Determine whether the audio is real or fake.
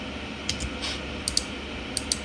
real